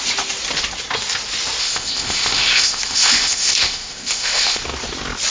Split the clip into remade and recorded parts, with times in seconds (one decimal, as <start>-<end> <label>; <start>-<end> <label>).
0.0-1.6 recorded; 1.6-4.6 remade; 4.6-5.3 recorded